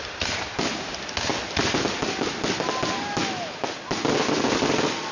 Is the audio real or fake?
real